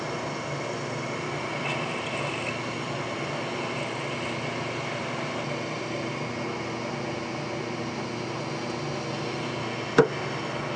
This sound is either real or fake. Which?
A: real